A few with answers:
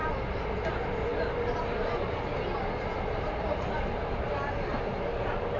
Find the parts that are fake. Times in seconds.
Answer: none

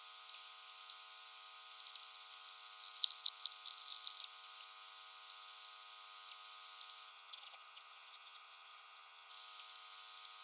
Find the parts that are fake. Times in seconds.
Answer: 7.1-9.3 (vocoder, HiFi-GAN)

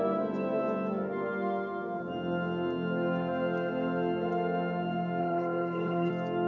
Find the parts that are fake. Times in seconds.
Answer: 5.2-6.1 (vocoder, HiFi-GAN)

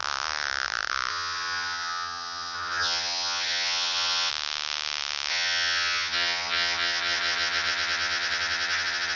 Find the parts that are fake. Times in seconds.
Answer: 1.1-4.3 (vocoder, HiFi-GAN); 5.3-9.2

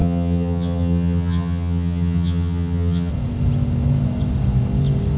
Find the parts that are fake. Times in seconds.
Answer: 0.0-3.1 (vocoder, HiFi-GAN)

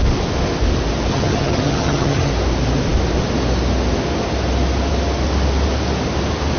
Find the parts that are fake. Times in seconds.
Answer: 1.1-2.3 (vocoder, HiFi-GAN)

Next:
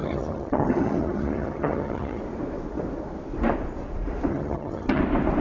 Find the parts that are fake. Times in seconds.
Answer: 0.0-2.2 (vocoder, HiFi-GAN); 4.3-5.0